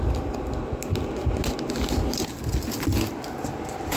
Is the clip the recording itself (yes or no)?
yes